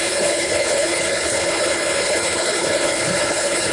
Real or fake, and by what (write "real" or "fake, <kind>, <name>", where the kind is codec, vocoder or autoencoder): fake, codec, HILCodec